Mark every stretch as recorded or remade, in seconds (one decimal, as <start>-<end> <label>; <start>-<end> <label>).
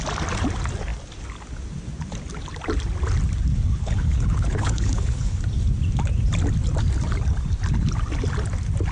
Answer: 0.0-3.5 recorded; 3.5-5.4 remade; 5.4-8.9 recorded